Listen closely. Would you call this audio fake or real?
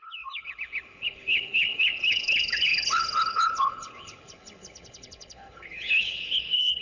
fake